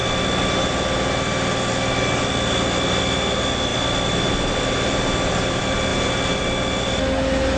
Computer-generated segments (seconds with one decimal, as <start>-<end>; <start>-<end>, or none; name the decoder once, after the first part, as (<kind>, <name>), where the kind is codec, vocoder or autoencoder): none

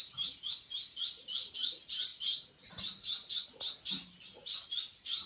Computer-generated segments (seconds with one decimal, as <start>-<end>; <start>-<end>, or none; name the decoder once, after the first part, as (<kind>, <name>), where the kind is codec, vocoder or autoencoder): none

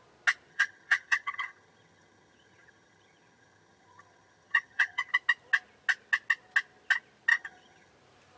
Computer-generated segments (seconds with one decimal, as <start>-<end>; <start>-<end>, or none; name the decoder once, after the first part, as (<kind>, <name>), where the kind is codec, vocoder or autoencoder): 0.5-5.1 (vocoder, HiFi-GAN); 7.3-7.9

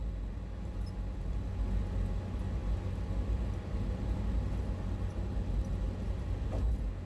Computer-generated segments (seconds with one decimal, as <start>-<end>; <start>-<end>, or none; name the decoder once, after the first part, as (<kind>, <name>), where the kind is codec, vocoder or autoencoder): none

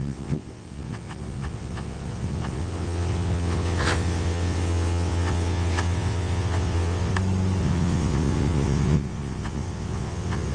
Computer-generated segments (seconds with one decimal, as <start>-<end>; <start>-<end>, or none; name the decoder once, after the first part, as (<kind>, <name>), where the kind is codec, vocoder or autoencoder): 0.0-7.1 (vocoder, WaveNeXt); 7.6-10.5

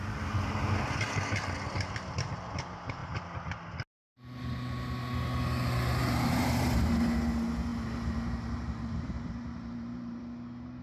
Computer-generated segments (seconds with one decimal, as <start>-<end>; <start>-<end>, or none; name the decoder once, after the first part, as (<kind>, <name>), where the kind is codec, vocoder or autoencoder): 6.0-6.9 (vocoder, BigVGAN v2); 7.7-10.2

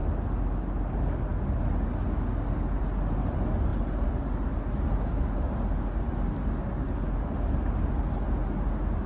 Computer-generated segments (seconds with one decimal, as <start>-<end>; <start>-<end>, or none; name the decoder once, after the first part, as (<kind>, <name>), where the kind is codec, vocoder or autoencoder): none

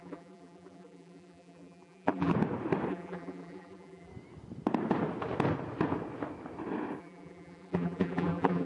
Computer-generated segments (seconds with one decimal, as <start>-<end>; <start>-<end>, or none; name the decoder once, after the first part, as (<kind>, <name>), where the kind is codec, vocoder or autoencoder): 0.0-2.3 (vocoder, BigVGAN v2); 2.9-4.1; 7.0-8.7